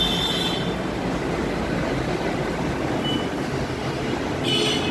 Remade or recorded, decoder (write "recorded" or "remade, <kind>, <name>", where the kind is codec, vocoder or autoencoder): recorded